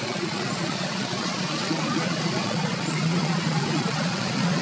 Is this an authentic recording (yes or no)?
no